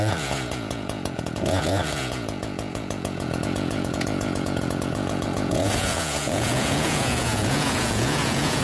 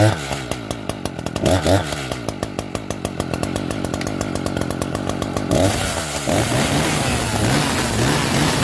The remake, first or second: first